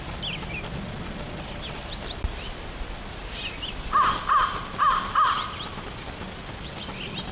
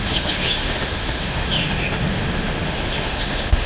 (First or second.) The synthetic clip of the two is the second